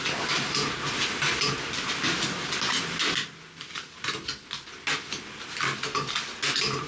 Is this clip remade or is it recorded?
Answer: recorded